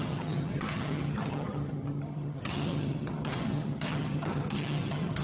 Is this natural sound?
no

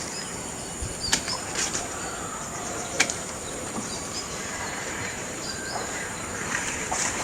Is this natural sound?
no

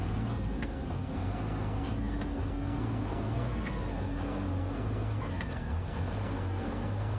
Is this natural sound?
no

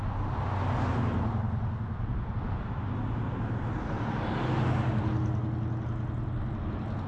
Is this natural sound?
yes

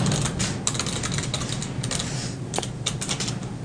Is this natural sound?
yes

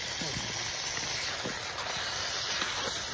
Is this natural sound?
yes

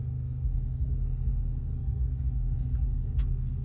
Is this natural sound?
no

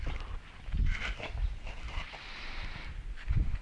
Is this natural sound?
yes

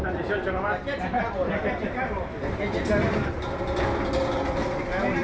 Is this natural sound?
yes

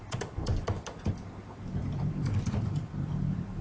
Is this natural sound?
no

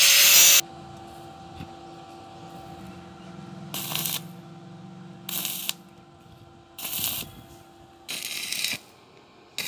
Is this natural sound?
yes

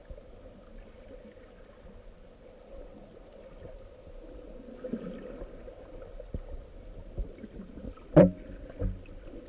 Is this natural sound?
yes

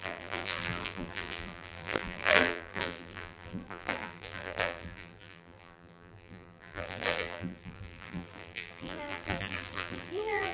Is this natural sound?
no